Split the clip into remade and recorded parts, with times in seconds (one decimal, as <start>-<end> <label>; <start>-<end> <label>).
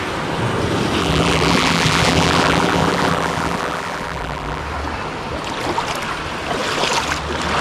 0.0-1.0 recorded; 1.0-4.6 remade; 4.6-7.6 recorded